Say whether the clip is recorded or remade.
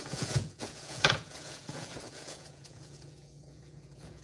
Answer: remade